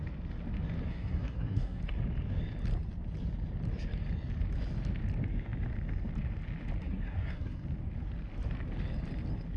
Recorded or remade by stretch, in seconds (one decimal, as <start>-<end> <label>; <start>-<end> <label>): 0.0-0.9 recorded; 0.9-1.8 remade; 1.8-6.8 recorded; 6.8-7.6 remade; 7.6-9.6 recorded